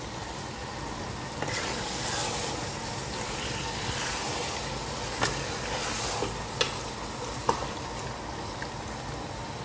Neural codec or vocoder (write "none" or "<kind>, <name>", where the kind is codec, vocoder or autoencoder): none